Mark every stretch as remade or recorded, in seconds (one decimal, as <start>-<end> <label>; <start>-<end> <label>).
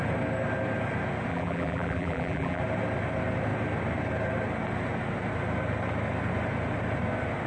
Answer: 0.0-1.3 recorded; 1.3-2.6 remade; 2.6-7.5 recorded